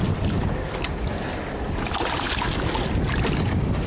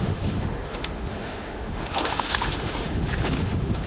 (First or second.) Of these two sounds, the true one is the first